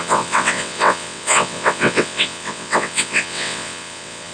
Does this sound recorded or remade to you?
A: remade